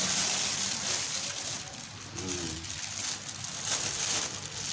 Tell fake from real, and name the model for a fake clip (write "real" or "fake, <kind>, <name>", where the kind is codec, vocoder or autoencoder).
real